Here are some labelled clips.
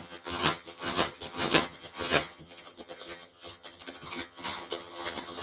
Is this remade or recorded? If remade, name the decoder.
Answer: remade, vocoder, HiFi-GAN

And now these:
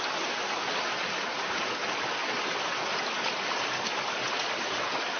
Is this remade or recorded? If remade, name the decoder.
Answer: recorded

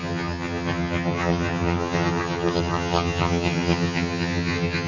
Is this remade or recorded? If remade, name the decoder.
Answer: remade, vocoder, HiFi-GAN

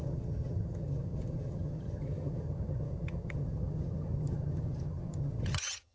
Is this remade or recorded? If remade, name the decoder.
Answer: remade, vocoder, HiFi-GAN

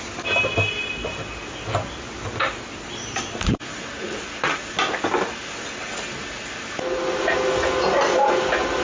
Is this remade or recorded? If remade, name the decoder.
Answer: recorded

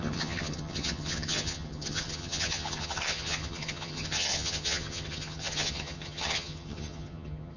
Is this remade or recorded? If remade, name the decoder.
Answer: remade, vocoder, HiFi-GAN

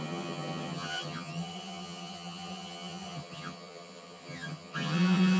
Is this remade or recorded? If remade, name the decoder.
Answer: remade, vocoder, HiFi-GAN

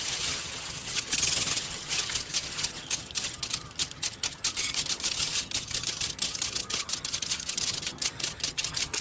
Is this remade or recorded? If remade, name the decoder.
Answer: remade, vocoder, HiFi-GAN